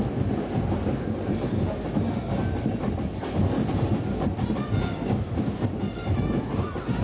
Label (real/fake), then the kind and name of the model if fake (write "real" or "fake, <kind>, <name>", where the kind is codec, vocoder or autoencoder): real